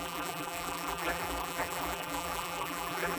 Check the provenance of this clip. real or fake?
fake